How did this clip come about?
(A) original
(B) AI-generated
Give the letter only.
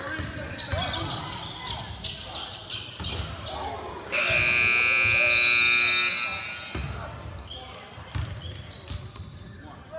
A